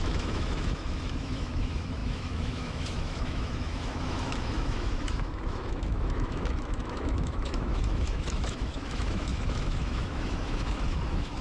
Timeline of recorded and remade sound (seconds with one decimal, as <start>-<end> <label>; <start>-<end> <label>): 0.0-11.4 remade